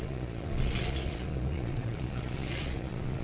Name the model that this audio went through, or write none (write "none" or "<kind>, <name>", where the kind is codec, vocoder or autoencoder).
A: vocoder, Vocos